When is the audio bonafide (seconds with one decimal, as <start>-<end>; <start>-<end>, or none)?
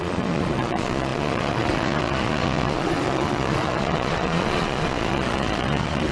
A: none